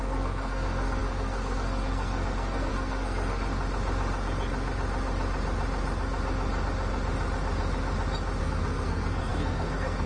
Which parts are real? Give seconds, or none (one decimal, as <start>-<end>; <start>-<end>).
3.5-8.4